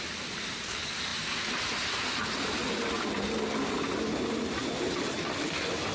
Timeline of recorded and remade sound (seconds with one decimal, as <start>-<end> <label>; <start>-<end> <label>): 0.0-5.9 recorded